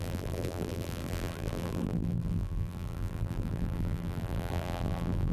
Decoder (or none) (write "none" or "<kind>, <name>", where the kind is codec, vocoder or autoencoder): vocoder, BigVGAN v2